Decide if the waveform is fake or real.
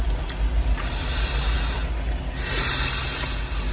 real